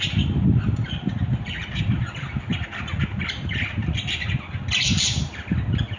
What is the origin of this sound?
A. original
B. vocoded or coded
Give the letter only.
A